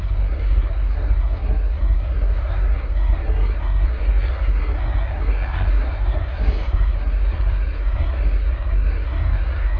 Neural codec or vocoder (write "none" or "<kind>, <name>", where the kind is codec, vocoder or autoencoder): codec, SNAC